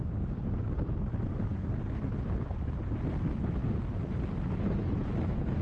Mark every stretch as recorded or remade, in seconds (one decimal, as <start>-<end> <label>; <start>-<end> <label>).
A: 0.0-5.6 recorded